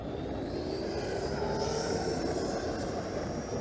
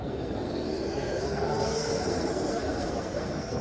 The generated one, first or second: second